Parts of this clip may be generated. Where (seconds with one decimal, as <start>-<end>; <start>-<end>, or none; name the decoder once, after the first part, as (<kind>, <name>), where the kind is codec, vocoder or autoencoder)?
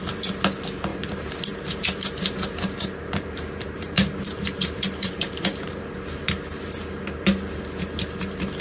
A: 0.9-5.8 (vocoder, BigVGAN v2)